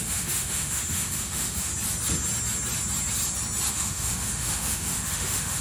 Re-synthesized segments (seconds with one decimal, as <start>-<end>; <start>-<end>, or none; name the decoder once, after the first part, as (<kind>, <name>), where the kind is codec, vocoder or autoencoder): 0.0-1.7 (autoencoder, DAC-VAE); 3.7-5.6